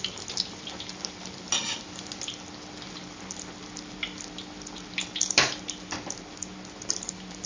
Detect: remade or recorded recorded